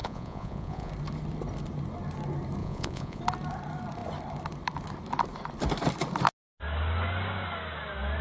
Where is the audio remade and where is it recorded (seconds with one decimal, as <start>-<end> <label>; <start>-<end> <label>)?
0.0-0.9 remade; 0.9-2.6 recorded; 2.6-3.2 remade; 3.2-8.2 recorded